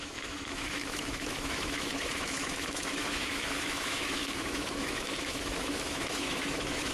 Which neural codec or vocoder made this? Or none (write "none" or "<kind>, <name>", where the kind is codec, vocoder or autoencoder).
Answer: autoencoder, DAC-VAE